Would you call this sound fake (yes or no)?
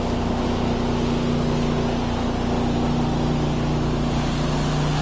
no